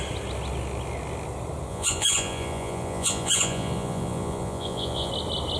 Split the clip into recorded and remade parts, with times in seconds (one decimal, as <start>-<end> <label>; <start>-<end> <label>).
0.0-1.7 recorded; 1.7-5.1 remade; 5.1-5.6 recorded